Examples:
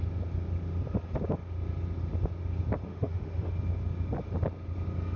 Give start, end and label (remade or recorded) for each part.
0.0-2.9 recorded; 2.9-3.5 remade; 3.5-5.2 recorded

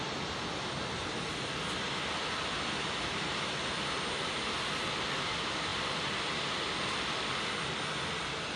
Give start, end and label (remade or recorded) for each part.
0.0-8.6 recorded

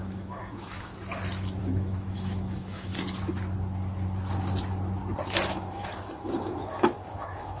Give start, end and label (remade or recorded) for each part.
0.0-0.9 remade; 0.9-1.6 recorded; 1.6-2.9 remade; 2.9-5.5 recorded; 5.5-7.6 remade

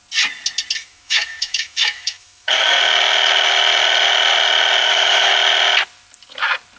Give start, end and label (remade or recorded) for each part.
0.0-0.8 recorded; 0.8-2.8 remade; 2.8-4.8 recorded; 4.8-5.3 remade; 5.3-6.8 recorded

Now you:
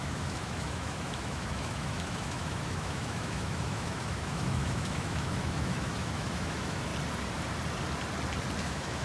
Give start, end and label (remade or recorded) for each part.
0.0-6.9 remade; 6.9-8.6 recorded; 8.6-9.0 remade

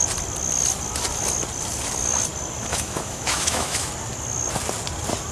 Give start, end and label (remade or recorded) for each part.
0.0-2.7 recorded; 2.7-3.9 remade; 3.9-5.3 recorded

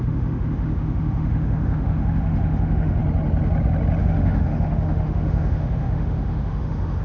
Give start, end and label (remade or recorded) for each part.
0.0-3.0 remade; 3.0-4.0 recorded; 4.0-7.0 remade

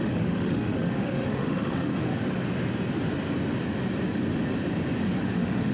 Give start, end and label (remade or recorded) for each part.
0.0-1.9 remade; 1.9-5.2 recorded; 5.2-5.7 remade